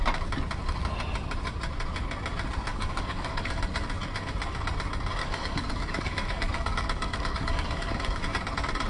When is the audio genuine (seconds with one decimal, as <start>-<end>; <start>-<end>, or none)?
0.0-2.7; 3.6-5.2; 8.2-8.9